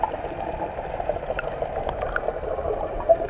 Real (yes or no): yes